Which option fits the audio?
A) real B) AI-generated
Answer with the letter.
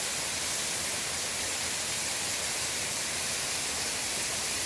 A